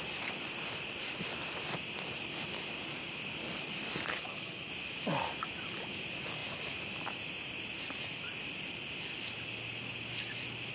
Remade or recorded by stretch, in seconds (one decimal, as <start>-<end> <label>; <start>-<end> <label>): 0.0-4.1 recorded; 4.1-4.7 remade; 4.7-10.7 recorded